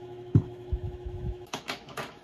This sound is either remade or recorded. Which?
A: remade